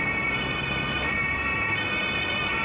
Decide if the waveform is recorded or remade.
recorded